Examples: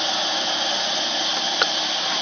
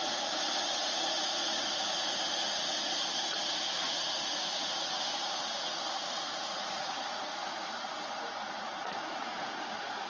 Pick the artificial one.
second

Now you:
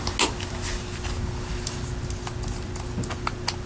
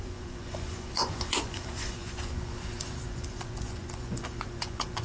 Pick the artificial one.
second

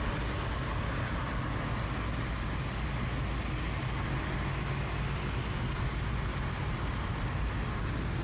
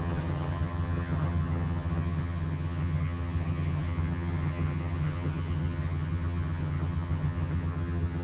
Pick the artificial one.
second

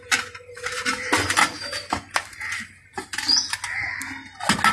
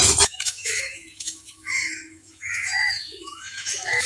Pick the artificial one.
second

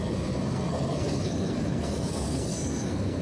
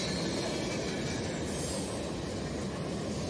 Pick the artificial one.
first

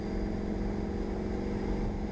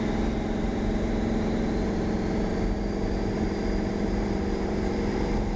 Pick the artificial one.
second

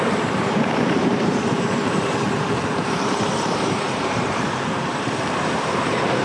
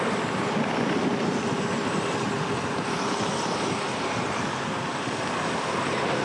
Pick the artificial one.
first